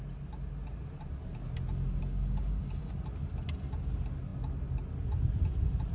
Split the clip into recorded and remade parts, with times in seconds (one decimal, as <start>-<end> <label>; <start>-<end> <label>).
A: 0.0-2.0 recorded; 2.0-2.9 remade; 2.9-5.9 recorded